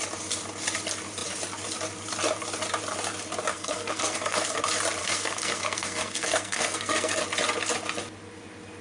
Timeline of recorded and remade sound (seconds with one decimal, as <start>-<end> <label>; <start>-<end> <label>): 0.0-3.5 recorded; 3.5-4.6 remade; 4.6-5.0 recorded; 5.0-7.2 remade; 7.2-8.8 recorded